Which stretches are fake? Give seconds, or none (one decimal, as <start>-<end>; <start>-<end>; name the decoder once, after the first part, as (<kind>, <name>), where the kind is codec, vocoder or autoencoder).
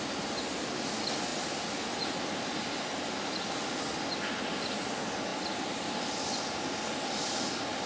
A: none